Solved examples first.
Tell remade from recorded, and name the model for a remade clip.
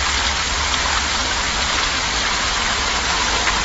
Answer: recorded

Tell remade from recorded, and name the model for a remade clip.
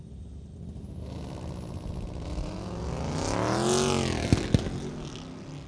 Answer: recorded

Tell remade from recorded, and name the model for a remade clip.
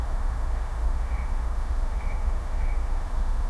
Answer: remade, autoencoder, DAC-VAE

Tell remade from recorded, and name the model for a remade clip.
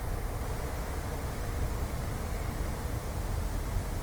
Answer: recorded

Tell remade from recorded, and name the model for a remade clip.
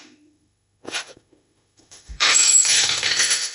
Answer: remade, autoencoder, DAC-VAE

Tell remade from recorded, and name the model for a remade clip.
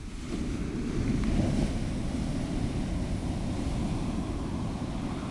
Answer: recorded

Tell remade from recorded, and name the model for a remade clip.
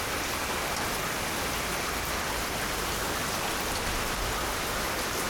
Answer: recorded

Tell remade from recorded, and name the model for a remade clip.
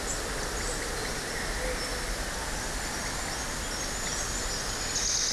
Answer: recorded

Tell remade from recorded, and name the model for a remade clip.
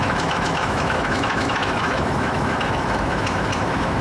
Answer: remade, autoencoder, DAC-VAE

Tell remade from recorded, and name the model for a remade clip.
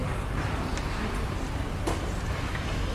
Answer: recorded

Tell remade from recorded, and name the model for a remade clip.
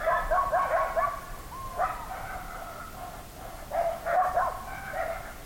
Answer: recorded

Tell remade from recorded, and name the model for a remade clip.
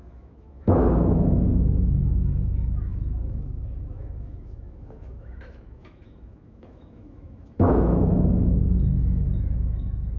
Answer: remade, autoencoder, DAC-VAE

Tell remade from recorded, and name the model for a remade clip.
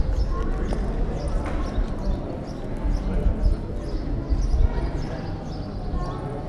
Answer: recorded